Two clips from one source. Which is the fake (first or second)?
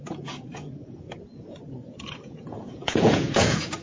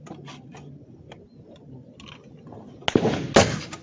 first